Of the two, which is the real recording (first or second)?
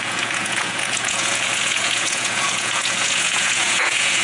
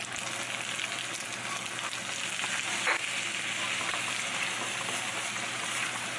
second